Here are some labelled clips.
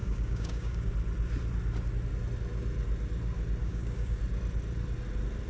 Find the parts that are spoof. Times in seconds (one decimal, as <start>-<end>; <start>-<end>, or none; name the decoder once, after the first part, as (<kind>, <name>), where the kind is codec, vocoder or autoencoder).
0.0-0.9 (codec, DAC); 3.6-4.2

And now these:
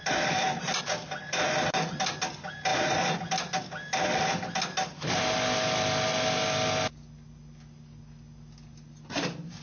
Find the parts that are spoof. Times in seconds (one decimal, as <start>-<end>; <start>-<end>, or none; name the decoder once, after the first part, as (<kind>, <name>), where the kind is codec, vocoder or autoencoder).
none

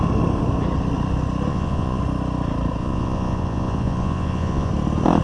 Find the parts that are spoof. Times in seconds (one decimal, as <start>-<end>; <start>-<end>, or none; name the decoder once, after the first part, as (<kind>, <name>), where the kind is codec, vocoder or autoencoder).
1.5-2.0 (vocoder, Vocos); 2.8-4.7